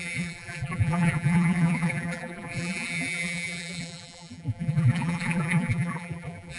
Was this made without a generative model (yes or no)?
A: no